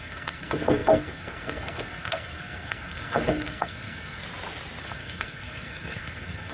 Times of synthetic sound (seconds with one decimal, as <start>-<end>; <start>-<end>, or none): 0.0-4.2; 4.8-6.5